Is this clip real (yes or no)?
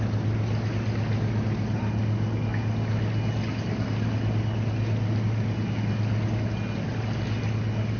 yes